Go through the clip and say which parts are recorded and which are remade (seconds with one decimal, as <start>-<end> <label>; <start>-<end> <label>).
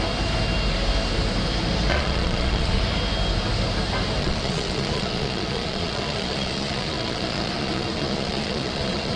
0.0-1.9 recorded; 1.9-2.8 remade; 2.8-4.2 recorded; 4.2-9.2 remade